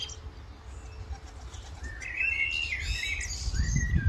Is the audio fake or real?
real